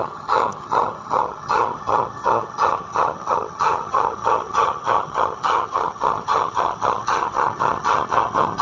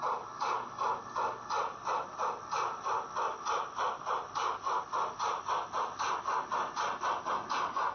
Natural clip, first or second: second